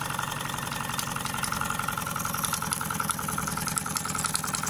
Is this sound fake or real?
real